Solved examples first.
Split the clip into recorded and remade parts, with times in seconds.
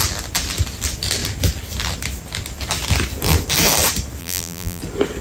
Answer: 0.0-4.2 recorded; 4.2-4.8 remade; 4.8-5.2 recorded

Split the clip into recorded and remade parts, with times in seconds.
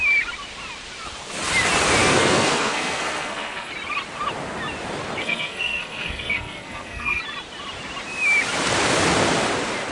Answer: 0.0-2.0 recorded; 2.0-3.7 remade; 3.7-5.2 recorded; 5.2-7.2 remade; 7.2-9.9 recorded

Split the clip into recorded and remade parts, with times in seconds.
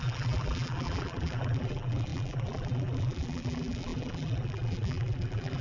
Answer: 0.0-5.6 remade